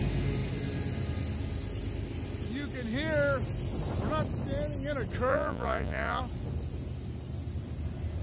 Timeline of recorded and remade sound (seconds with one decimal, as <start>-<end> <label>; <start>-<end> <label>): 0.0-5.3 recorded; 5.3-6.2 remade; 6.2-8.2 recorded